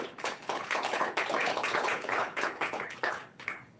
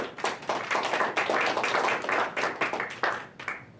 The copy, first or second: first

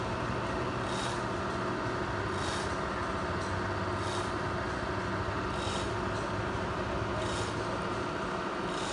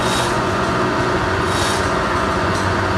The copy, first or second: second